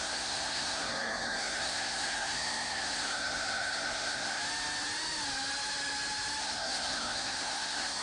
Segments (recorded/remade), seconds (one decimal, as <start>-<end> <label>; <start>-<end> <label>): 0.0-4.4 remade; 4.4-6.4 recorded; 6.4-8.0 remade